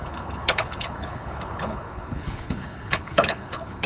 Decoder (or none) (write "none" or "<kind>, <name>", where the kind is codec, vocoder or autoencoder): codec, HILCodec